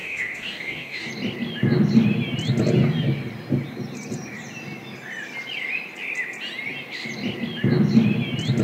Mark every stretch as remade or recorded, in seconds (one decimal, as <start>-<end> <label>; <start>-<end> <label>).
0.0-1.1 remade; 1.1-8.6 recorded